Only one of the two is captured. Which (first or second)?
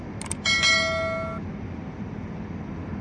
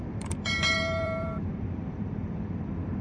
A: first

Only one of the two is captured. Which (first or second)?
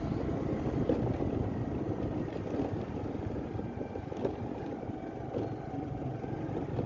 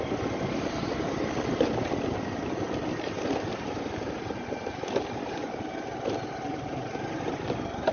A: first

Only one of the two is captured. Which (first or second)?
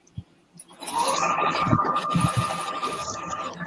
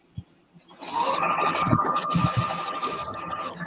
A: second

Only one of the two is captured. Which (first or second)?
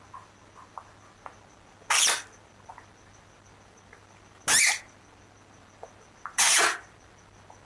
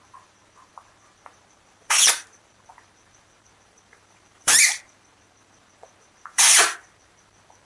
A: first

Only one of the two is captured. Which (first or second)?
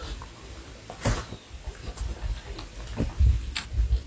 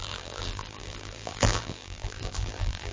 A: first